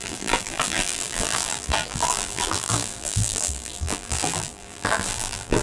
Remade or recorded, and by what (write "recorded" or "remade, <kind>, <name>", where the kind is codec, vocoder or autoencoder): remade, vocoder, BigVGAN v2